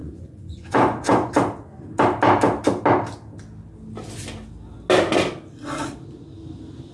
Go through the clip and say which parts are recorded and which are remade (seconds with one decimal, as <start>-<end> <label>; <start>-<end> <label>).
0.0-1.3 remade; 1.3-6.9 recorded